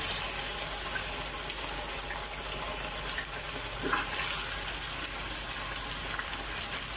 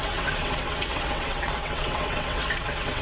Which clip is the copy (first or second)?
second